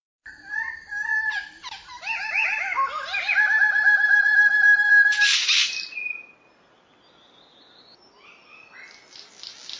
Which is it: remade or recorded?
recorded